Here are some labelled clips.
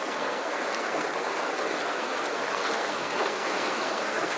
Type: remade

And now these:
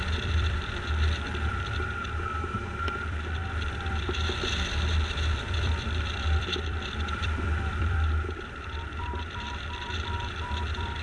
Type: remade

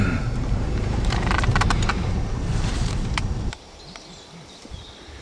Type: remade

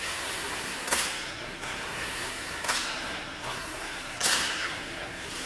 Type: remade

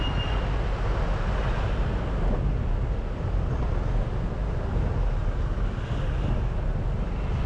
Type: recorded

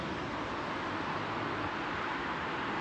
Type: recorded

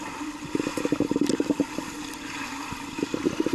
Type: recorded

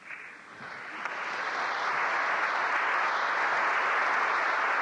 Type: recorded